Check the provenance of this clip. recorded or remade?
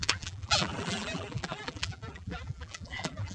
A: remade